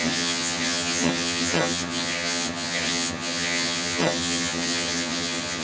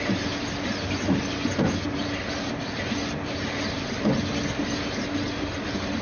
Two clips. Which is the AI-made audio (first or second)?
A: first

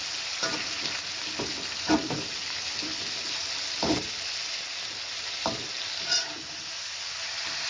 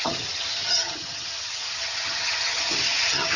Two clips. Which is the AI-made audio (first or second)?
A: second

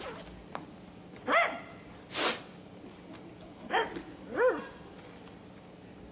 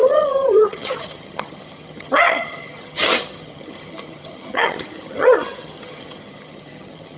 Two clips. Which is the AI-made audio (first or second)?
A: second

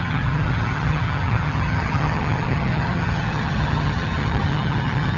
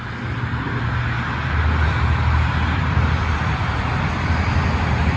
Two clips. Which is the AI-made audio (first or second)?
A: first